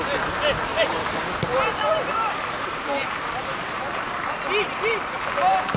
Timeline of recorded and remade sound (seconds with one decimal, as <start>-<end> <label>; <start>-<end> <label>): 0.0-0.7 recorded; 0.7-4.2 remade; 4.2-5.8 recorded